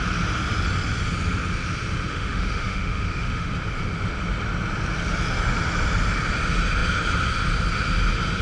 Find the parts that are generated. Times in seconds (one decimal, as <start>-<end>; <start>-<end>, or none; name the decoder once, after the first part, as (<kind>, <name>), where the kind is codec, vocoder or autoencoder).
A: 2.1-3.5 (autoencoder, DAC-VAE)